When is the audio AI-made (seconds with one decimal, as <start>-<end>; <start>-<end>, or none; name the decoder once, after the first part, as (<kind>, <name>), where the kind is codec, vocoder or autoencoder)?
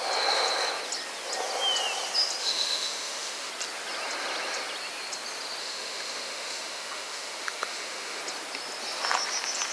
2.4-3.5 (autoencoder, DAC-VAE); 5.6-8.2